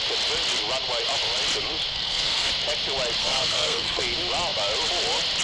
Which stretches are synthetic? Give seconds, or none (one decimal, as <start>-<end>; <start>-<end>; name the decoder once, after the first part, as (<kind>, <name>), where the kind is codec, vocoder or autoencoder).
1.9-2.5 (codec, SNAC); 3.2-4.0